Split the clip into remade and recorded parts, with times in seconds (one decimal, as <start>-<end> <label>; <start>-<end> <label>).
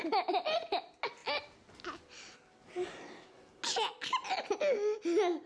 0.0-5.5 recorded